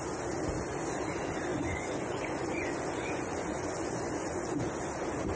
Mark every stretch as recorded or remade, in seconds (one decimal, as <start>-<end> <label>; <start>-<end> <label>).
0.0-1.5 recorded; 1.5-4.7 remade; 4.7-5.4 recorded